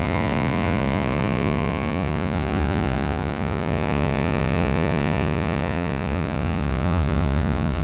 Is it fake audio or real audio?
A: fake